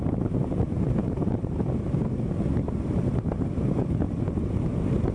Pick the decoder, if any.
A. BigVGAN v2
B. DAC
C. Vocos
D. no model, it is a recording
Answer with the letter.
A